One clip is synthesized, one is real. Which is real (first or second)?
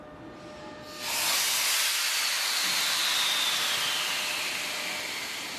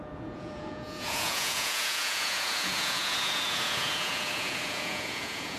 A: first